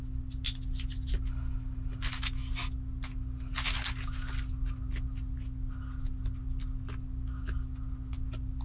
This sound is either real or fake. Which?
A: real